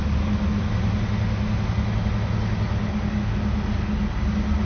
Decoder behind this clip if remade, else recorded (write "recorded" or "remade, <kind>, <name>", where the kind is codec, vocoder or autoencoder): recorded